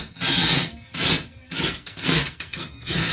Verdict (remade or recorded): remade